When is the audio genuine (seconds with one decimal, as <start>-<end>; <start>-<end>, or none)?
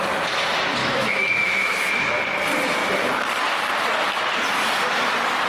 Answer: 0.0-0.8; 2.1-5.5